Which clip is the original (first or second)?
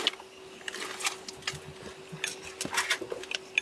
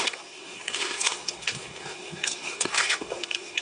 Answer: first